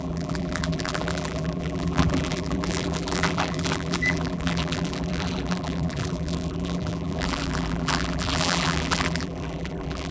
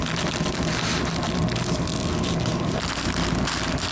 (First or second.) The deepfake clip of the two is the first